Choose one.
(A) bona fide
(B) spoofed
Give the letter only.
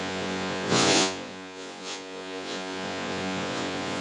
B